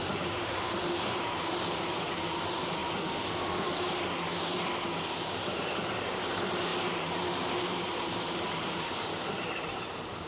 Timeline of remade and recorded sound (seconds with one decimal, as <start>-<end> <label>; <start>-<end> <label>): 0.0-2.8 remade; 2.8-5.2 recorded; 5.2-10.3 remade